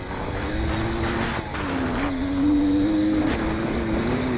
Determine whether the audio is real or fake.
real